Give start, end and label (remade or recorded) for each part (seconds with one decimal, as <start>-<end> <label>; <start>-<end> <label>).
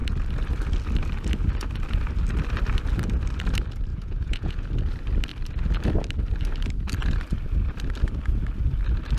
0.0-3.9 recorded; 3.9-4.7 remade; 4.7-9.2 recorded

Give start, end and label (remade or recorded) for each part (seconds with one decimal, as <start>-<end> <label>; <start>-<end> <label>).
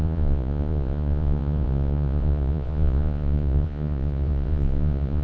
0.0-5.2 remade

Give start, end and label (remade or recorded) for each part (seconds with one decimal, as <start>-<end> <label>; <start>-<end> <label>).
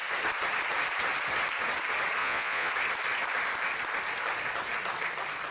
0.0-2.2 recorded; 2.2-2.7 remade; 2.7-5.5 recorded